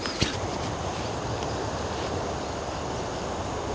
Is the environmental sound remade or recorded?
recorded